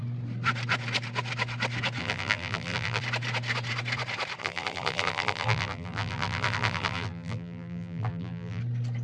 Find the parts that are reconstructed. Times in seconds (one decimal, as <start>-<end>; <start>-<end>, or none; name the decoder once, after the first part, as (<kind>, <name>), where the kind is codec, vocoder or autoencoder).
2.0-3.0 (vocoder, BigVGAN v2); 4.4-8.6